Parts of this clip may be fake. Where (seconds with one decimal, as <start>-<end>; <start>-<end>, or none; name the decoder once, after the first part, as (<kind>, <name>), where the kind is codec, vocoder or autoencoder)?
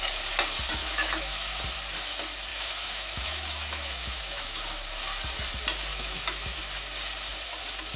0.8-1.6 (autoencoder, DAC-VAE); 2.5-4.6; 5.9-6.6